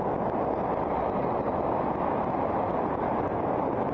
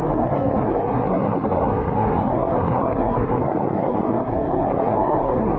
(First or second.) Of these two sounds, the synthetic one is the second